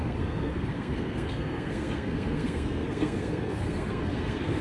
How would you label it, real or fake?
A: fake